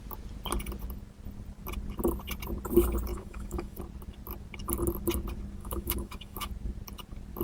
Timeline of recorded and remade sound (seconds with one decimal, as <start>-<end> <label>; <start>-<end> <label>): 0.0-3.1 recorded; 3.1-3.8 remade; 3.8-5.6 recorded; 5.6-6.5 remade; 6.5-7.4 recorded